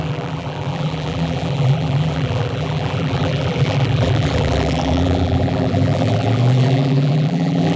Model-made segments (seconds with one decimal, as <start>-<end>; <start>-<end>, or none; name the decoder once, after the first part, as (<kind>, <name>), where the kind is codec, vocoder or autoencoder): 0.0-7.8 (vocoder, BigVGAN v2)